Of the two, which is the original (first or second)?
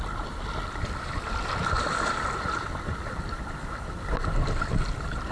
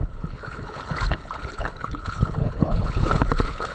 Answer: first